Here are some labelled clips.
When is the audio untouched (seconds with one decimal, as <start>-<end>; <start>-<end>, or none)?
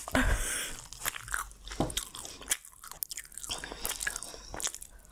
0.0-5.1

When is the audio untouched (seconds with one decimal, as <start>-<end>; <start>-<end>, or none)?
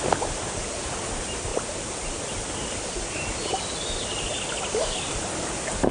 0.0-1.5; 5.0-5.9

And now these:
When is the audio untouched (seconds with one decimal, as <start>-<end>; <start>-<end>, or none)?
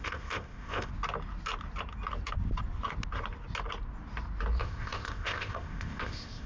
0.9-4.6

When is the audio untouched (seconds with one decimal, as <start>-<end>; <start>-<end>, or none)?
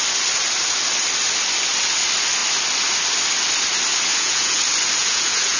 0.0-4.1; 4.6-5.0